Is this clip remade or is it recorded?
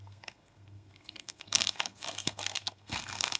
remade